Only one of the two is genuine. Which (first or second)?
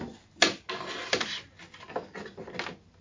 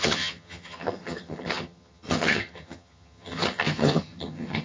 first